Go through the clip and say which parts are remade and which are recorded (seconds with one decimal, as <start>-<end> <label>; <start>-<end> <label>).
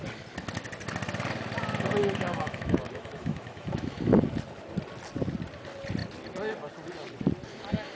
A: 0.0-2.0 recorded; 2.0-4.0 remade; 4.0-7.9 recorded